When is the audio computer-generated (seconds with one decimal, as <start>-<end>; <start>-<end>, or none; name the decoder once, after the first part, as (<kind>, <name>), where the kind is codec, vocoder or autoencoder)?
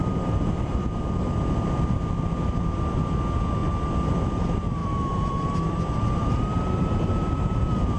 0.0-1.0 (vocoder, BigVGAN v2); 4.8-8.0